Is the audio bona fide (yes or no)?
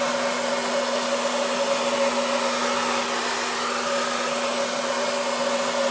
yes